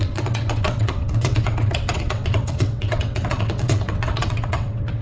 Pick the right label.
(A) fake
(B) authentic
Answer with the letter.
A